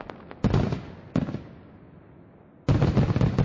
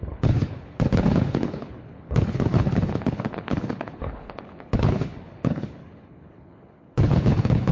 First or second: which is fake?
second